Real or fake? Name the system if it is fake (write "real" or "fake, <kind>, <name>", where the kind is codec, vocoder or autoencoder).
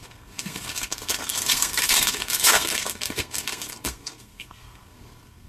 fake, codec, SNAC